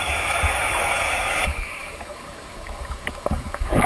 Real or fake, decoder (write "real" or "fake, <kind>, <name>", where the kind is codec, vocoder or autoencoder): fake, codec, DAC